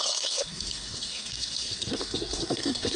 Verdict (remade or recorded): remade